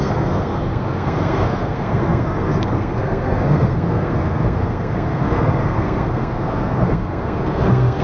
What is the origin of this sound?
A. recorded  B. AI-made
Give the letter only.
B